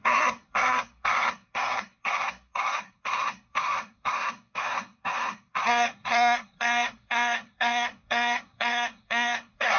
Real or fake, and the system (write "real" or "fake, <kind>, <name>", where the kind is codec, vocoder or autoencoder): fake, codec, SNAC